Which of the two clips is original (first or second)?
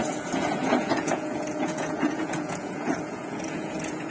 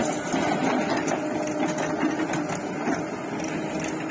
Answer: second